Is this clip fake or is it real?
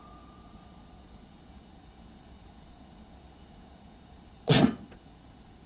fake